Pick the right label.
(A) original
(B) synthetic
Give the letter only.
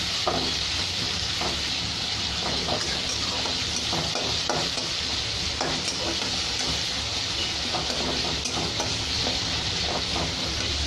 A